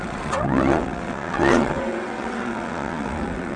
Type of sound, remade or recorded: remade